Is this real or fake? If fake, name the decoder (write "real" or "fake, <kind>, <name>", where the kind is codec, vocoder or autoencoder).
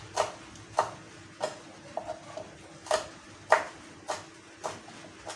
real